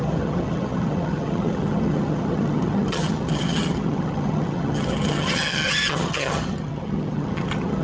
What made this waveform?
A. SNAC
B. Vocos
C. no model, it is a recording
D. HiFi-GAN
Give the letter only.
D